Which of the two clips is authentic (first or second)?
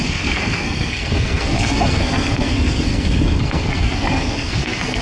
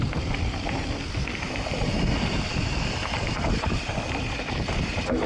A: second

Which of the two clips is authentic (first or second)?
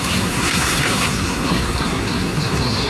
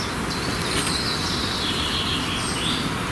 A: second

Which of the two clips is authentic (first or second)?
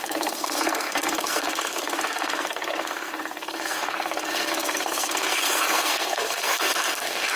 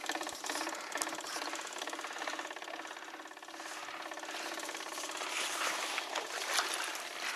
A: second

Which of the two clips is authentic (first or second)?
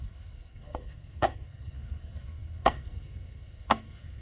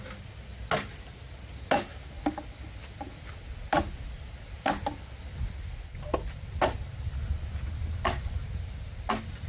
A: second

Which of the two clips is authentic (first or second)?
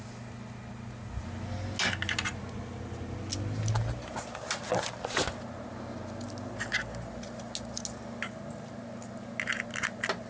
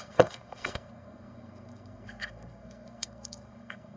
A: first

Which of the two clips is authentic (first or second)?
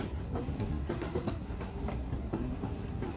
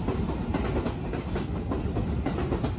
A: second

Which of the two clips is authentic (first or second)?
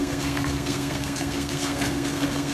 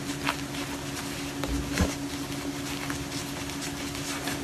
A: second